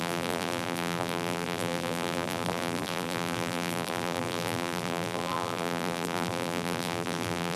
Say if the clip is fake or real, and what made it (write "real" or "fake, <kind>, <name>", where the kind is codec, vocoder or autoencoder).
fake, vocoder, BigVGAN v2